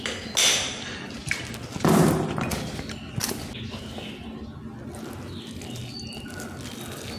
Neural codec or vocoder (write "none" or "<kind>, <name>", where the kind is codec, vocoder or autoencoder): none